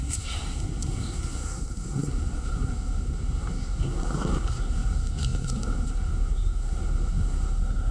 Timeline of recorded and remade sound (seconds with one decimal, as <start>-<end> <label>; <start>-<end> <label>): 0.0-7.9 remade